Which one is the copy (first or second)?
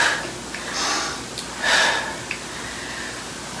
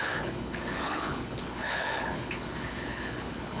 second